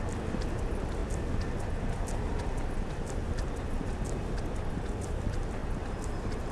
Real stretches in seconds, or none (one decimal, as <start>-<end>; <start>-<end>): 0.0-6.5